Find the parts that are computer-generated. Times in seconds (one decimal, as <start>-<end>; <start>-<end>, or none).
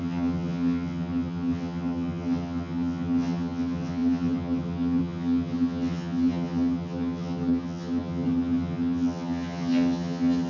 0.0-10.5